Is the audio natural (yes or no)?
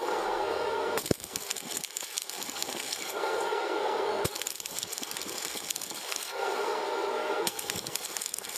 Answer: no